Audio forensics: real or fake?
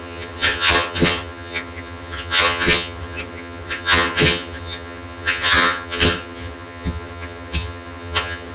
fake